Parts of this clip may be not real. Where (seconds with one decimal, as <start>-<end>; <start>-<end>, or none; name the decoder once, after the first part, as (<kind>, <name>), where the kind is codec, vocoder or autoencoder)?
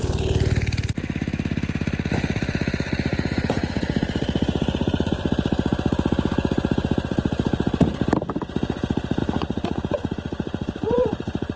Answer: 3.1-5.1 (vocoder, Vocos); 9.2-11.6